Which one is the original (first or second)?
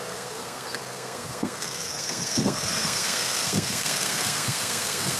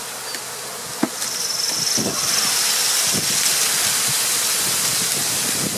second